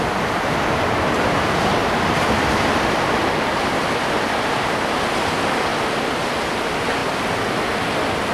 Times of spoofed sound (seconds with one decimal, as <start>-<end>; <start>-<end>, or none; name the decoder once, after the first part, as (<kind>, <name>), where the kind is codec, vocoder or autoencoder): 1.8-4.7 (vocoder, BigVGAN v2); 5.7-6.3; 7.0-8.3